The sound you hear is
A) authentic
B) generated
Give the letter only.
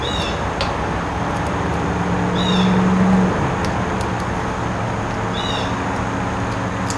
A